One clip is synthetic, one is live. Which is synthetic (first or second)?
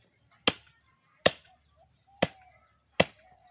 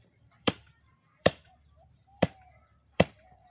second